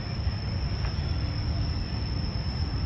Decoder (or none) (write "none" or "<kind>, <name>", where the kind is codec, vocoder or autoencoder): none